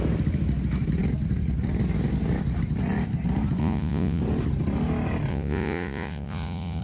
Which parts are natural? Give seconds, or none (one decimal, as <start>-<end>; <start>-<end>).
0.0-3.6; 4.2-5.3